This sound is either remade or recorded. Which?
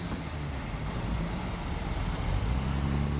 recorded